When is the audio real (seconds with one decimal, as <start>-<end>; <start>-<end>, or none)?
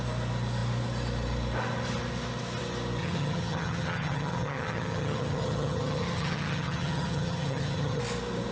0.0-3.0; 8.0-8.5